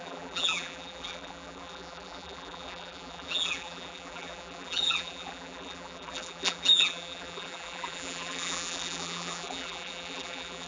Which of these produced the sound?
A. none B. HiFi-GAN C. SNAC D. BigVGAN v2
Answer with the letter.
D